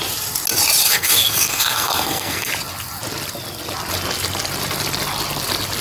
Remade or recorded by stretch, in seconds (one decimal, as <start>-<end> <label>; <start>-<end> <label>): 0.0-0.8 recorded; 0.8-2.5 remade; 2.5-5.8 recorded